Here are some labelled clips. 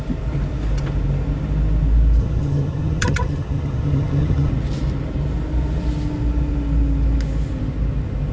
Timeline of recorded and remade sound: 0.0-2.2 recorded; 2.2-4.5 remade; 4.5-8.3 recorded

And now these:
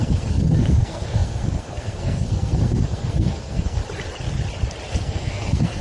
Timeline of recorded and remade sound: 0.0-3.8 remade; 3.8-4.9 recorded; 4.9-5.8 remade

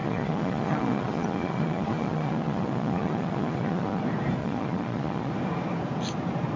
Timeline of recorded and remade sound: 0.0-4.0 remade; 4.0-4.4 recorded; 4.4-5.3 remade; 5.3-6.6 recorded

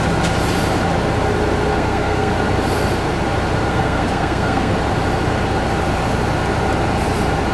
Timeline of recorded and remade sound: 0.0-1.7 recorded; 1.7-2.3 remade; 2.3-3.7 recorded; 3.7-4.7 remade; 4.7-7.5 recorded